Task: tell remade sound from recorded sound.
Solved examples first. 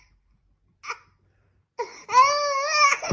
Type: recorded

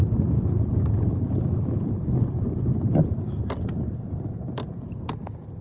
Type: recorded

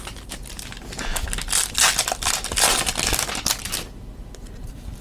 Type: recorded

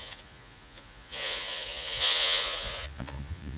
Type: remade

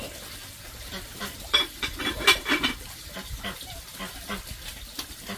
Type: remade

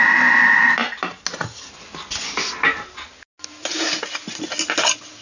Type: recorded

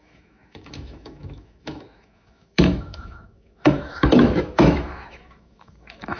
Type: remade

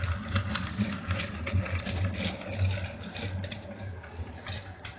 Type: recorded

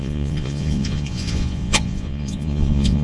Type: remade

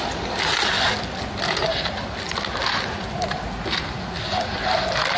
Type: recorded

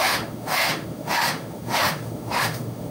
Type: remade